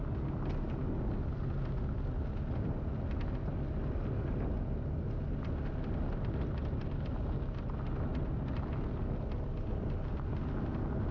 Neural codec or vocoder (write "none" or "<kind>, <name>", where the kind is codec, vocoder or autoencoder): none